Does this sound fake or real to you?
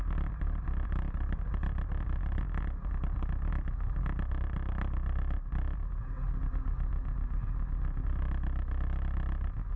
real